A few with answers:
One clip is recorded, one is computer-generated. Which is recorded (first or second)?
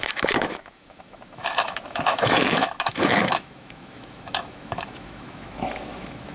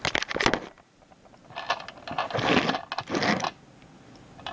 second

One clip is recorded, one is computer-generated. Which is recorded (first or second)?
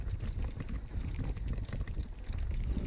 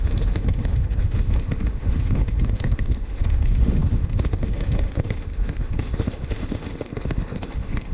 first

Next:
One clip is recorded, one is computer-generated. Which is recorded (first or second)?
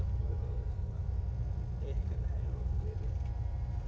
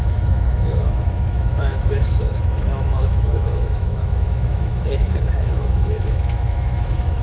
first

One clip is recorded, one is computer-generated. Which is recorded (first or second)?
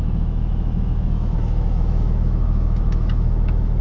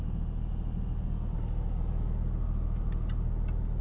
second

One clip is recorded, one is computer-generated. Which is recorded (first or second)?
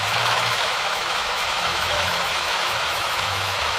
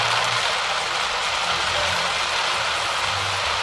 second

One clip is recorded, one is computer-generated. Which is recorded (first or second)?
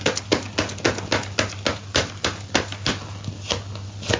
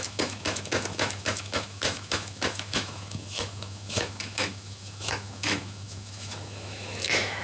first